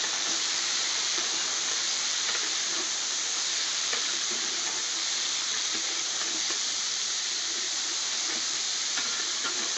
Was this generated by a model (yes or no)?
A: yes